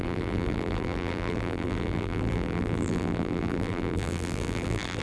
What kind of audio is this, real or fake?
fake